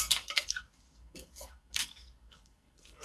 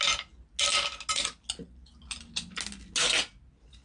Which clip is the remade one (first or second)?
first